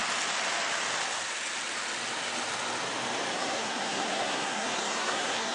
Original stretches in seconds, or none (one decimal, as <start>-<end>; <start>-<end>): 0.0-3.3